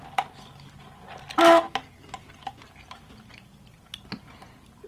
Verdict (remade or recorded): recorded